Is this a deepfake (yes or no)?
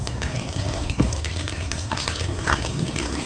yes